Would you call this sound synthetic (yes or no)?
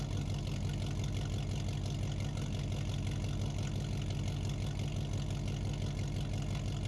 no